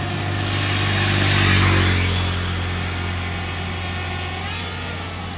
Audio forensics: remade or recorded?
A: recorded